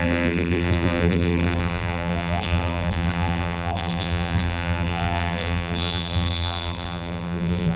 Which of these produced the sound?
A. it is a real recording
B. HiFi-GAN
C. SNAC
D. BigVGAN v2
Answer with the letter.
D